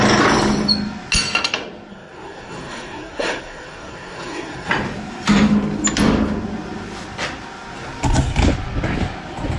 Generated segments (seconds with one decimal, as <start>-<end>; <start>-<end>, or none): 1.9-4.7